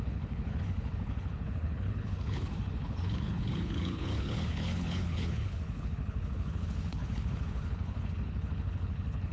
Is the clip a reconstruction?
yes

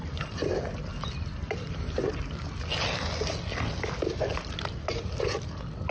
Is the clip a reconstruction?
no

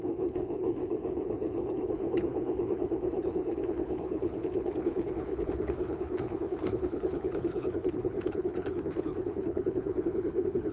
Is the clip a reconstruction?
yes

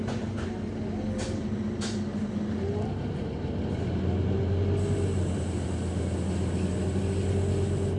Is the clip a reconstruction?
no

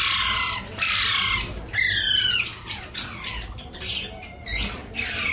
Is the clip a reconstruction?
no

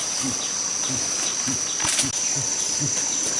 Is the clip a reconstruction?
no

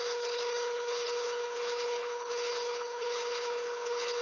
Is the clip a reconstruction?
yes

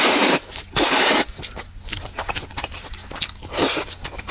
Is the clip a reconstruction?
no